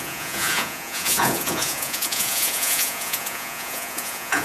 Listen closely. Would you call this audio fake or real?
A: fake